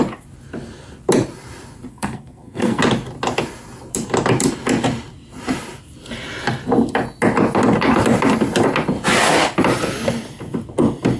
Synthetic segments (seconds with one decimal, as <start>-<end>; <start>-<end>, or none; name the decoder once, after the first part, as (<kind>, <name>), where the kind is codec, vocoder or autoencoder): 1.9-2.8 (codec, SNAC)